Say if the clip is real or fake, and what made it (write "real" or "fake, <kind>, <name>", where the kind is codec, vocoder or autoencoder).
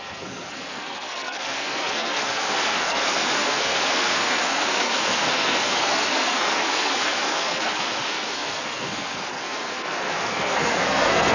fake, codec, SNAC